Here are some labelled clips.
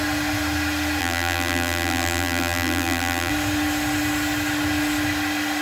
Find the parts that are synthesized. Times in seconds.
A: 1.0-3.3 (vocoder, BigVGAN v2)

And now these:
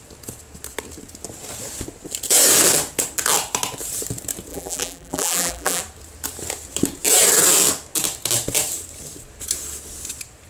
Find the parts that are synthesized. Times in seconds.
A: 4.5-5.8 (vocoder, BigVGAN v2)

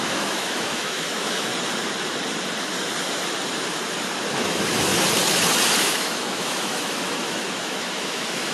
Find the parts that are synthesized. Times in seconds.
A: 0.0-1.5 (autoencoder, DAC-VAE); 4.3-4.9; 5.8-8.5

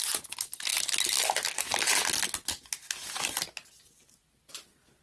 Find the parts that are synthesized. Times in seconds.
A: none

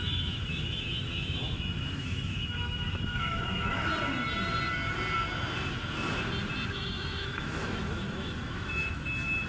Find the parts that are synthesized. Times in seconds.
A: 0.0-3.9 (autoencoder, DAC-VAE); 6.7-9.5

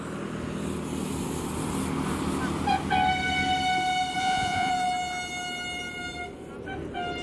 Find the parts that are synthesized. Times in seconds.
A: 4.2-4.7 (vocoder, Vocos)

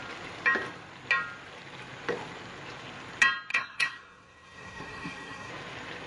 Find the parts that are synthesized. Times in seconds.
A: 3.5-5.5 (codec, SNAC)

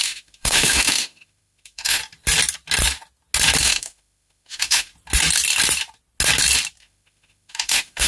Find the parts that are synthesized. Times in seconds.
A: 0.0-2.0 (autoencoder, DAC-VAE); 3.6-4.9; 6.8-8.1